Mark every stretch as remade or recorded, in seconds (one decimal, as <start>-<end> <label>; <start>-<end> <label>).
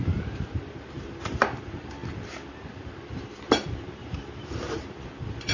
0.0-5.5 remade